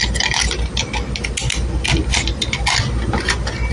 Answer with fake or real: real